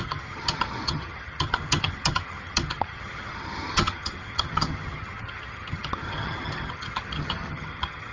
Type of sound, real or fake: fake